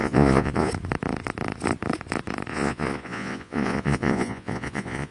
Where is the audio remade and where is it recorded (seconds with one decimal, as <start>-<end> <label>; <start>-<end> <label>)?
0.0-0.7 remade; 0.7-2.5 recorded; 2.5-5.1 remade